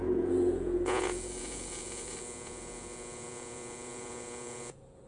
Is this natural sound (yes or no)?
no